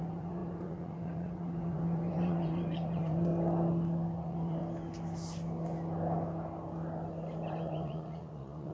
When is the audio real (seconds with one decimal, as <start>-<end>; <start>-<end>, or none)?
3.3-4.1; 4.6-7.5